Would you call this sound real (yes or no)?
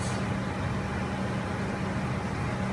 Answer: yes